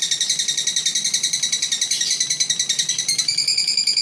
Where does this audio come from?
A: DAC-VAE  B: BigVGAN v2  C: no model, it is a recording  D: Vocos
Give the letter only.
B